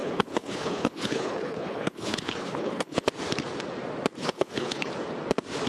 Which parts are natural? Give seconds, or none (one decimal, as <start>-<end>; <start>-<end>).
3.1-4.2; 4.9-5.7